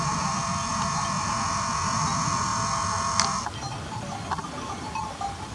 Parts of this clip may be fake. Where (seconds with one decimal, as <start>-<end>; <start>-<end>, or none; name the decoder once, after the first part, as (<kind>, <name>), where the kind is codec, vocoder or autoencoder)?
none